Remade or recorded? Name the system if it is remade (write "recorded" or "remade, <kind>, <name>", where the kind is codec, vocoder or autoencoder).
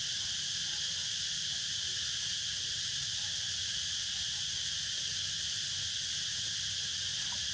recorded